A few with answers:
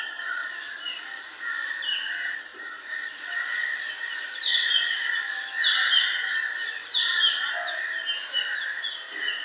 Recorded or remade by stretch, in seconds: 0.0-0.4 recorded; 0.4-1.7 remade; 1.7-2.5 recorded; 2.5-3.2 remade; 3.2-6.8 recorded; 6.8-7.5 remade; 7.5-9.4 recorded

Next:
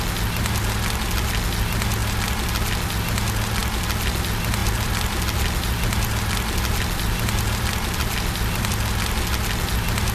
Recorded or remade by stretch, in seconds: 0.0-4.6 recorded; 4.6-8.7 remade; 8.7-10.1 recorded